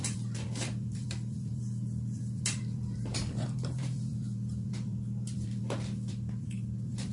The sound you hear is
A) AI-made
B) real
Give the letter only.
A